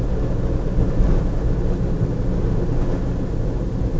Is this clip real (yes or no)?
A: yes